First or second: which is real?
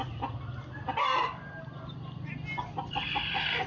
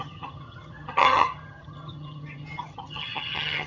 first